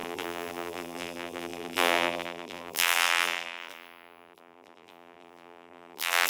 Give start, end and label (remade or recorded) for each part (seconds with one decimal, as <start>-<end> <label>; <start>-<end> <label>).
0.0-6.3 remade